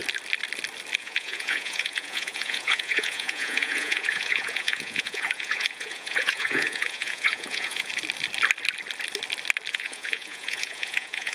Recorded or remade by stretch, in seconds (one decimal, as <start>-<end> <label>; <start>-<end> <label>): 0.0-1.0 recorded; 1.0-7.9 remade; 7.9-9.7 recorded; 9.7-11.3 remade